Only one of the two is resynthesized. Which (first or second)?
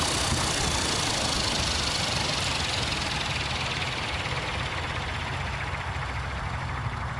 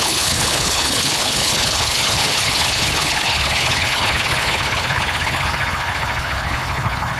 second